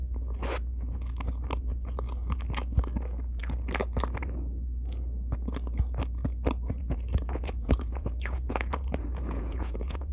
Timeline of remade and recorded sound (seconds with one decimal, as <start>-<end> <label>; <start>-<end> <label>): 0.0-6.8 recorded; 6.8-10.1 remade